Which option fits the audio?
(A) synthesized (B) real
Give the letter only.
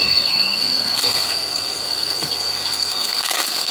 A